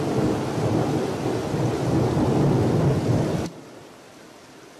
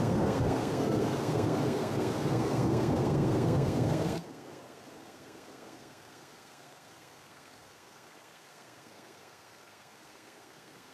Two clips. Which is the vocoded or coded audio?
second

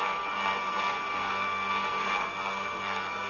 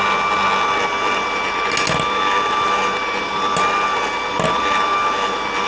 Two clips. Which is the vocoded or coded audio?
first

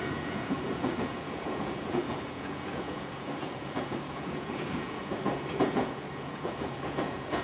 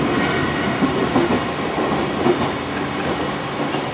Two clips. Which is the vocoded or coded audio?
first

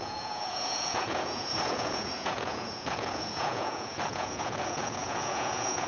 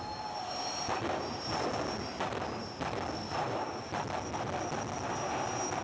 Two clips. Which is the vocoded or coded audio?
first